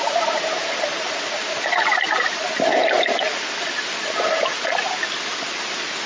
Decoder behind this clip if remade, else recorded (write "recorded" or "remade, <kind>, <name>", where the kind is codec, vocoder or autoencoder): recorded